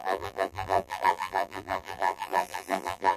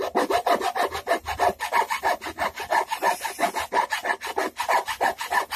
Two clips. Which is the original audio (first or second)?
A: second